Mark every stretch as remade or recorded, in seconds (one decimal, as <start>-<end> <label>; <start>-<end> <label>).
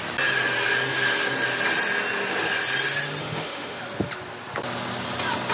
0.0-3.2 recorded; 3.2-3.8 remade; 3.8-5.5 recorded